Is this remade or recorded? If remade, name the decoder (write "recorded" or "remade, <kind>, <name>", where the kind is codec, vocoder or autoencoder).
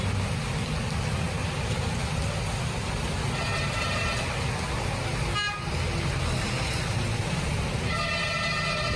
recorded